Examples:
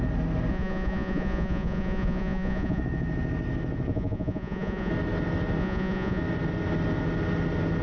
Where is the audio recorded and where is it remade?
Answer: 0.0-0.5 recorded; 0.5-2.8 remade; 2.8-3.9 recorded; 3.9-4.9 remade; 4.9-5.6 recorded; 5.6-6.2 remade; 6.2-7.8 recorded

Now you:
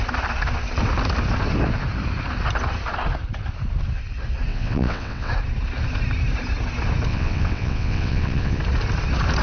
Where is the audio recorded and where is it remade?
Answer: 0.0-4.5 recorded; 4.5-5.3 remade; 5.3-7.1 recorded; 7.1-8.6 remade; 8.6-9.4 recorded

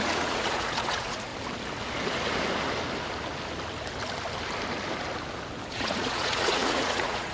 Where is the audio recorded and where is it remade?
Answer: 0.0-1.3 remade; 1.3-5.7 recorded; 5.7-7.3 remade

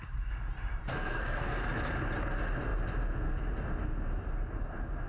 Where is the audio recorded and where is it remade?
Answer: 0.0-0.9 recorded; 0.9-1.6 remade; 1.6-5.1 recorded

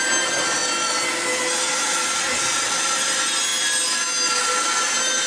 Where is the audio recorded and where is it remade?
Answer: 0.0-5.3 recorded

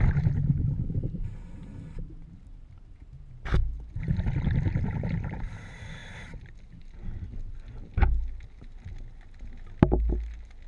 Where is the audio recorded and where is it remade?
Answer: 0.0-0.4 recorded; 0.4-1.0 remade; 1.0-10.7 recorded

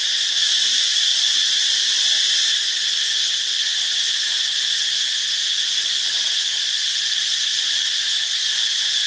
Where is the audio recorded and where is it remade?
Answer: 0.0-9.1 recorded